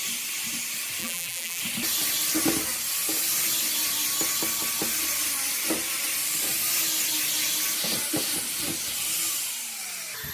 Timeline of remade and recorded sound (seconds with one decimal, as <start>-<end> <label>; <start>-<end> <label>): 0.0-1.0 recorded; 1.0-1.6 remade; 1.6-10.3 recorded